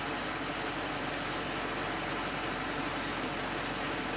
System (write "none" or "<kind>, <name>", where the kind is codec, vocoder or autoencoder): none